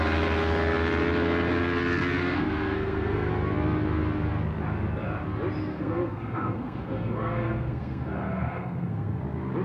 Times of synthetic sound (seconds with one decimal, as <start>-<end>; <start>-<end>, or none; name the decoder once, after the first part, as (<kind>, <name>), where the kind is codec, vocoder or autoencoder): 2.2-3.3 (codec, SNAC); 5.7-9.2